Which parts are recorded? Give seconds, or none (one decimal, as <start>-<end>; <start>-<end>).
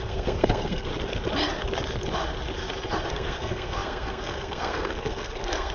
0.9-3.1